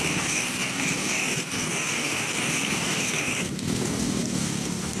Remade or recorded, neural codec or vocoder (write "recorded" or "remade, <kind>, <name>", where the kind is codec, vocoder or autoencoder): remade, codec, DAC